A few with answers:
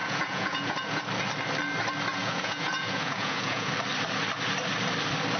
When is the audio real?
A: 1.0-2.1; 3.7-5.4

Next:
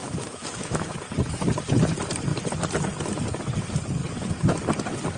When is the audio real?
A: 1.0-5.2

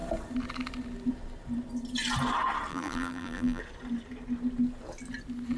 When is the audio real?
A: 0.0-2.7; 3.6-5.6

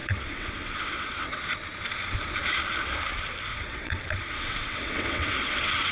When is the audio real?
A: 1.4-3.5

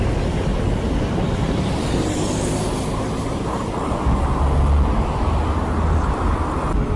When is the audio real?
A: 0.0-0.5; 2.5-7.0